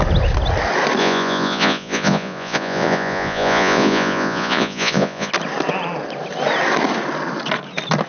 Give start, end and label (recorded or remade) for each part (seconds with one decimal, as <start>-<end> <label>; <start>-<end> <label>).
0.0-1.0 recorded; 1.0-5.3 remade; 5.3-8.1 recorded